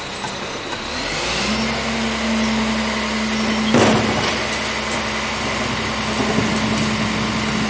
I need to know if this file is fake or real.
real